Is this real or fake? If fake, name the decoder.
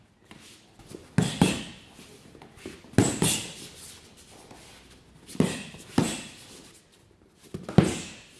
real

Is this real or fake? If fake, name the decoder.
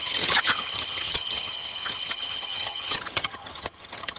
fake, vocoder, HiFi-GAN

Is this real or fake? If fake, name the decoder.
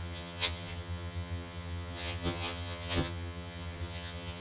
fake, vocoder, HiFi-GAN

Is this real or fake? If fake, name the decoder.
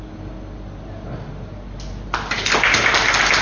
real